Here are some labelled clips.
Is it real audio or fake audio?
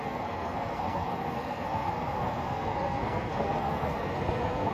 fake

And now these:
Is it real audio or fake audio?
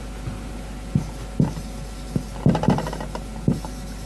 real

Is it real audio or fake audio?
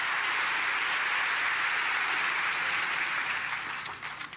real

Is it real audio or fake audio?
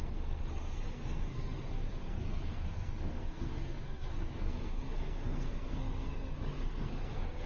fake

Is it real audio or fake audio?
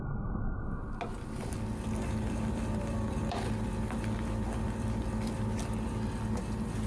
real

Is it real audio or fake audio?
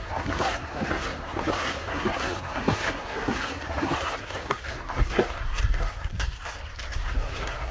fake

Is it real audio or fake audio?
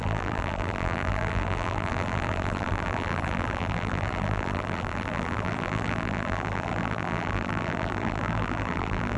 fake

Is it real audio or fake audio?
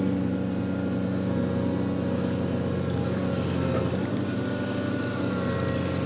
real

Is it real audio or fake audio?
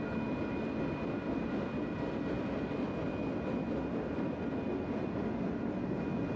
real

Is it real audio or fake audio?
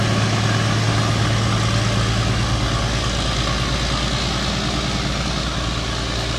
real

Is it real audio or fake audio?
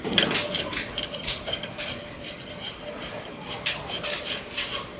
real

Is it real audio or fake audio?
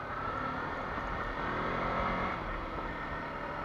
real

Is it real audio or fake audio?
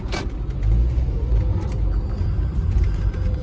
real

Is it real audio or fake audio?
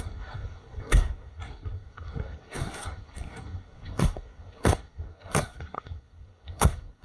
fake